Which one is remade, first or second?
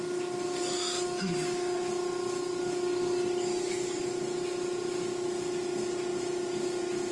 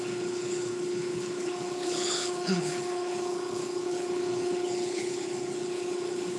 second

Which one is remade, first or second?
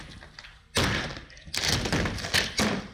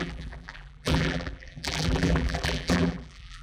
second